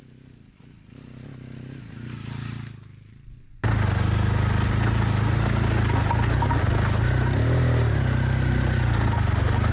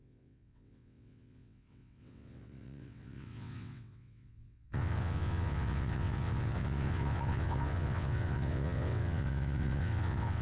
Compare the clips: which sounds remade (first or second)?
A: second